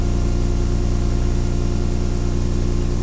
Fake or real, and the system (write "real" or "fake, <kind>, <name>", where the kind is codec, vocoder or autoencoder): real